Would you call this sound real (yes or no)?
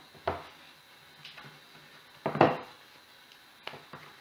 yes